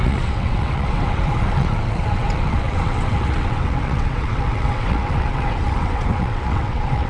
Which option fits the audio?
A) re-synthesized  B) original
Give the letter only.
A